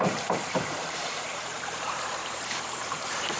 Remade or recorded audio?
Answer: remade